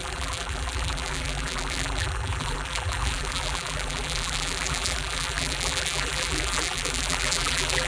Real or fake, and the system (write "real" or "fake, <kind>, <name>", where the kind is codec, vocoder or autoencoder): fake, vocoder, BigVGAN v2